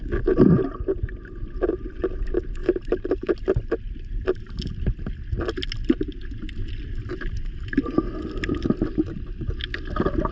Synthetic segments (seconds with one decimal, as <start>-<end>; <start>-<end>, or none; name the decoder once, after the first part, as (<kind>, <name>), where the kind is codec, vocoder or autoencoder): 2.6-4.6 (vocoder, BigVGAN v2); 7.1-7.6